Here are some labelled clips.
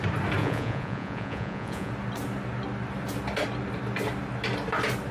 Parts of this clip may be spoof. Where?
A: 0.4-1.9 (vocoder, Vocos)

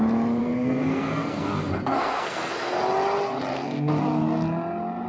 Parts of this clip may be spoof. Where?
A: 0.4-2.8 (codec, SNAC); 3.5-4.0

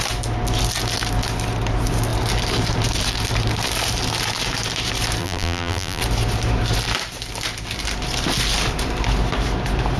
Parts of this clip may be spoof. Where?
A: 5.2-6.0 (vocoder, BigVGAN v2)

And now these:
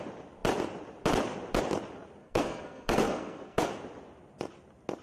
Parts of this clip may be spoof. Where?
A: 2.2-3.7 (codec, SNAC)